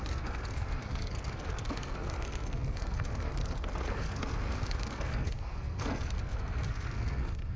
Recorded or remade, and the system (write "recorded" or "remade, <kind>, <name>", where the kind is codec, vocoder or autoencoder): remade, codec, SNAC